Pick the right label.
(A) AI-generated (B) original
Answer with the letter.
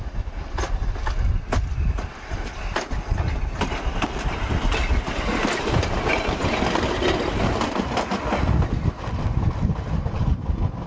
B